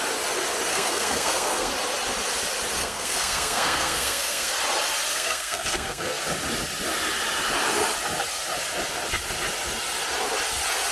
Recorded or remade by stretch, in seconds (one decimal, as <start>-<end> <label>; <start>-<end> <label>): 0.0-0.7 recorded; 0.7-1.7 remade; 1.7-2.8 recorded; 2.8-4.5 remade; 4.5-5.1 recorded; 5.1-6.2 remade; 6.2-10.9 recorded